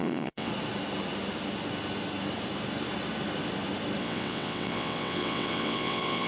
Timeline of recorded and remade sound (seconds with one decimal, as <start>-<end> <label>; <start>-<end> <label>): 0.0-0.5 remade; 0.5-4.0 recorded; 4.0-6.3 remade